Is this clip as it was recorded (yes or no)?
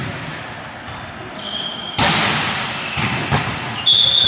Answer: no